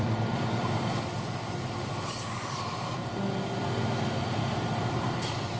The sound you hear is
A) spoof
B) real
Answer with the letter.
A